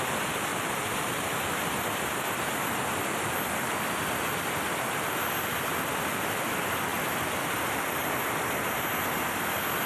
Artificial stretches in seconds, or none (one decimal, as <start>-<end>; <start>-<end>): none